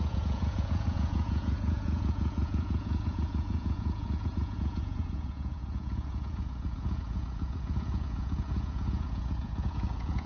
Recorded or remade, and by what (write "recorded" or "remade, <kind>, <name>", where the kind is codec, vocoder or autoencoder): remade, vocoder, Vocos